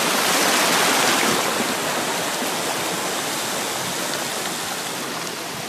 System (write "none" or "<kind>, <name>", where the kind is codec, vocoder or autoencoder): none